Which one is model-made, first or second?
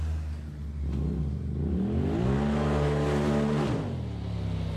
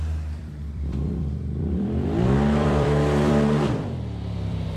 second